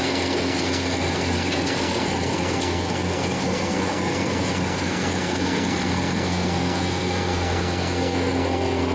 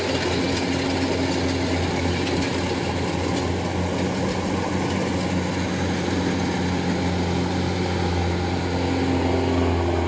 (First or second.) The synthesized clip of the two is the first